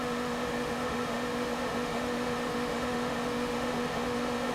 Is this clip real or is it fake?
fake